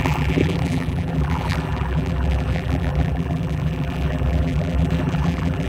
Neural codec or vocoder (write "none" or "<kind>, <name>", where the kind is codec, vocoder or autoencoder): vocoder, BigVGAN v2